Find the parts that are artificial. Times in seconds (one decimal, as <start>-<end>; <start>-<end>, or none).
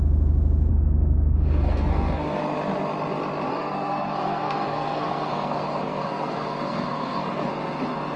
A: 0.7-2.4; 3.5-7.5